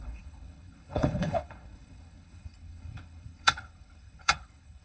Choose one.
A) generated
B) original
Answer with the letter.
A